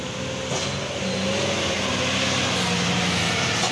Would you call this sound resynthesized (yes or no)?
no